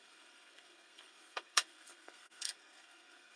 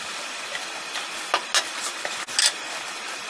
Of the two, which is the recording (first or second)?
second